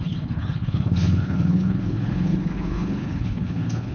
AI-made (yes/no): yes